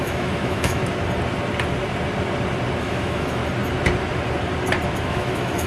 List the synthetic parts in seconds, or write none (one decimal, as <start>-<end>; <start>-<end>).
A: 0.0-0.8; 2.8-3.4; 5.0-5.7